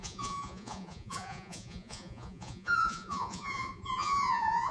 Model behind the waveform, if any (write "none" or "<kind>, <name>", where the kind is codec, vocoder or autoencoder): vocoder, Vocos